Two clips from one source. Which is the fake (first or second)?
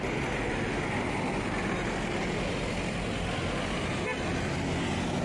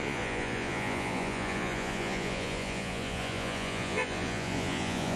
second